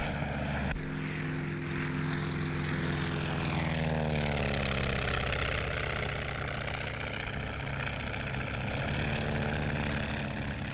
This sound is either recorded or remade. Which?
recorded